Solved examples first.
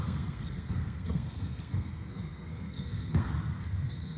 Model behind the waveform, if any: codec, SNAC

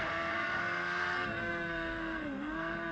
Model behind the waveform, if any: codec, SNAC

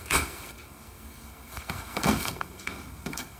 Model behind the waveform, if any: codec, SNAC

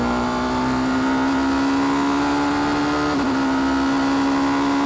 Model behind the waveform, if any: none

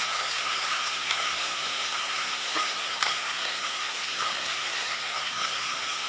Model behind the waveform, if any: codec, SNAC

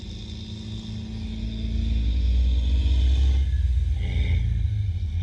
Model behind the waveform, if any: none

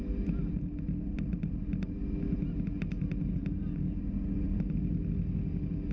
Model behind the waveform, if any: none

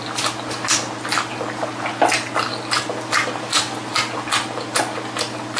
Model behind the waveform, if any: none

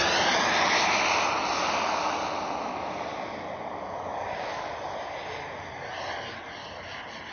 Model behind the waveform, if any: none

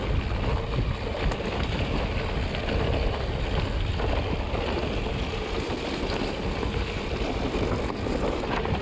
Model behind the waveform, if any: none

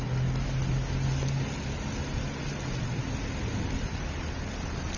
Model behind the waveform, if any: none